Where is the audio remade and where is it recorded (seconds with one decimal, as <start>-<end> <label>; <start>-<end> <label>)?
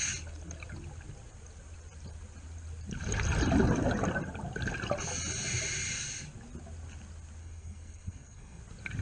0.0-7.4 recorded; 7.4-8.6 remade; 8.6-9.0 recorded